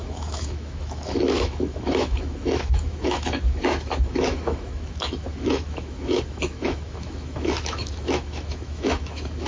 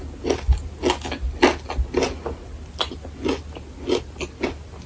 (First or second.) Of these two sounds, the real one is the second